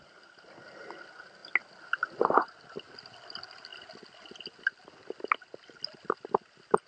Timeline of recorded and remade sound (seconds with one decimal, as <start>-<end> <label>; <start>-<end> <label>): 0.0-6.9 recorded